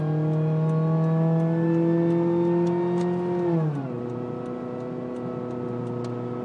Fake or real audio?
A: real